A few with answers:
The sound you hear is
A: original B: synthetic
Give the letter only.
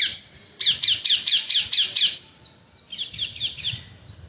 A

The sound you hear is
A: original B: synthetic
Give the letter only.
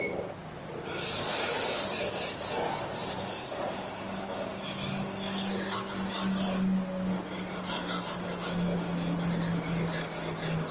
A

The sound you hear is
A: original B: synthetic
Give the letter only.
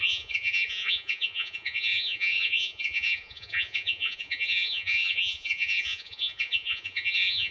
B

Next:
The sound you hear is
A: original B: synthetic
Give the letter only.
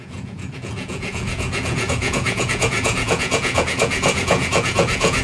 B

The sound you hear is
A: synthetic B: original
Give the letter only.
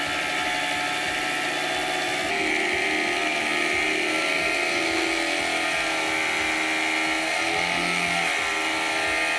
B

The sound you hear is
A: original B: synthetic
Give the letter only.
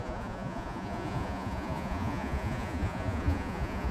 B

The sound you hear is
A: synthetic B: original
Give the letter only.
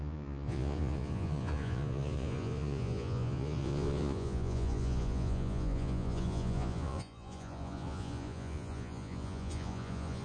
A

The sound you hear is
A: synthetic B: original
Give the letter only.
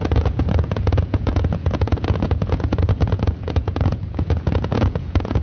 A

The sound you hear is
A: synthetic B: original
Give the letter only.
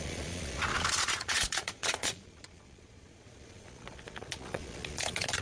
A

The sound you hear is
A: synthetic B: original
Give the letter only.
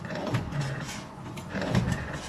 A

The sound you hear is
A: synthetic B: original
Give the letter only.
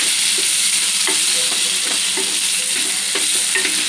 B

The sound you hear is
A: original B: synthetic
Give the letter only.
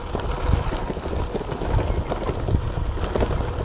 A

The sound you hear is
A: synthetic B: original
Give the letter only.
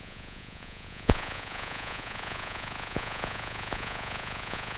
A